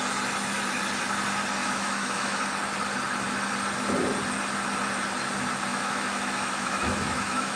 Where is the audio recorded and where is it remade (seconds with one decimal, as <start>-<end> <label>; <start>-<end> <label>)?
0.0-1.6 recorded; 1.6-2.4 remade; 2.4-5.7 recorded; 5.7-7.6 remade